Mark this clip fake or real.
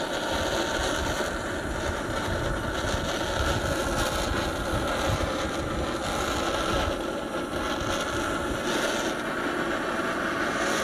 real